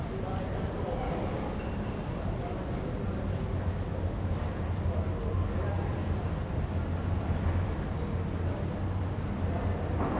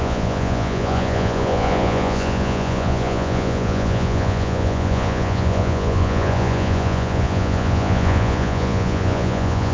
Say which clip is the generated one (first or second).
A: second